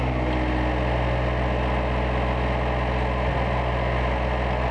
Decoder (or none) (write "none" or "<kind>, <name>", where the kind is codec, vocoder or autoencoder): none